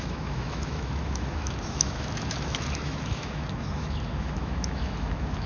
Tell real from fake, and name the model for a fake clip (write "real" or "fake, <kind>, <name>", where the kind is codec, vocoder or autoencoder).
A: fake, autoencoder, DAC-VAE